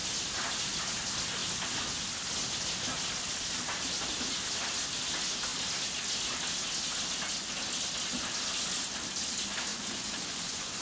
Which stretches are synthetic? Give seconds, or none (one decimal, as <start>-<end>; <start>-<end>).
9.7-10.8